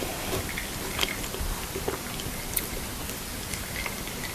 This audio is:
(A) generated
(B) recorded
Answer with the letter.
B